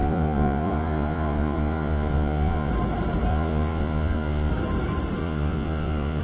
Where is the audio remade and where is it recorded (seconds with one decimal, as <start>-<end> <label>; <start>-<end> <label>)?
0.0-2.7 remade; 2.7-3.3 recorded; 3.3-4.5 remade; 4.5-5.2 recorded; 5.2-6.2 remade